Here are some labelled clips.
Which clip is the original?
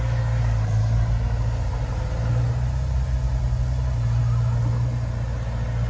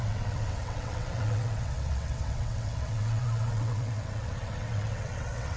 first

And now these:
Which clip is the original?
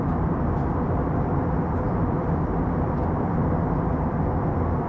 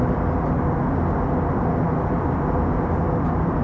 second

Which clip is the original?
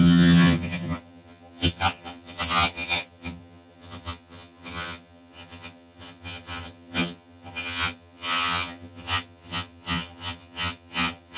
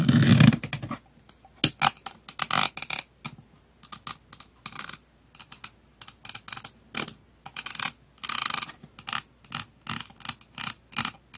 second